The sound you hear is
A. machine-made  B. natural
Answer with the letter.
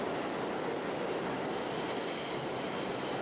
B